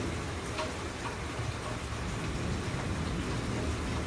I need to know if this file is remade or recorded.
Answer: recorded